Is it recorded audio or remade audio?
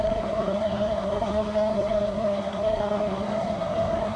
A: remade